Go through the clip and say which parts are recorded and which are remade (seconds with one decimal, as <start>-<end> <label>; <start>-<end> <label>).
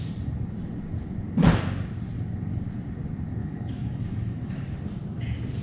0.0-3.4 recorded; 3.4-4.5 remade; 4.5-5.6 recorded